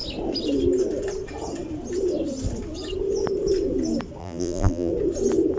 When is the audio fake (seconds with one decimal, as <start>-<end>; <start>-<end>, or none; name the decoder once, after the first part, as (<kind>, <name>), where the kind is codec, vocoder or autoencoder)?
4.2-4.9 (vocoder, BigVGAN v2)